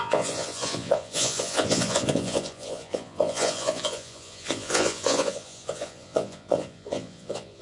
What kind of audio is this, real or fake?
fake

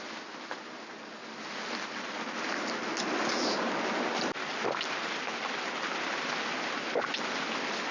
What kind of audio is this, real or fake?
real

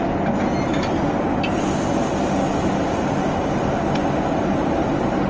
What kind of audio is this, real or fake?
real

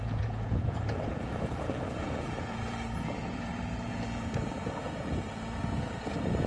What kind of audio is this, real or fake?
fake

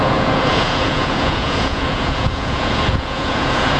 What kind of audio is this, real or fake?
fake